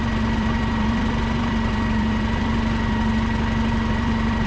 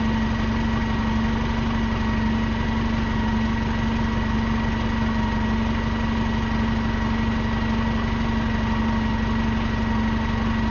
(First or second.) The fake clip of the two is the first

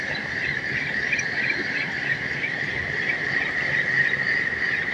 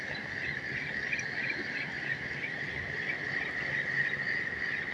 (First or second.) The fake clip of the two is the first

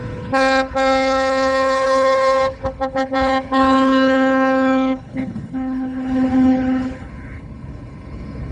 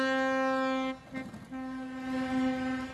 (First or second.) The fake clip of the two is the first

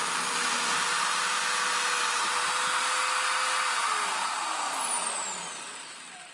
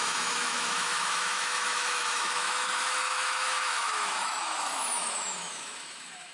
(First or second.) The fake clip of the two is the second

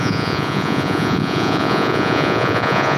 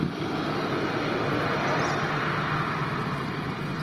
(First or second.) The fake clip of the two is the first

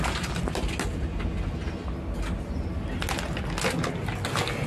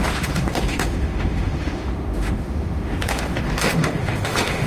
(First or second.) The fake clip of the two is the second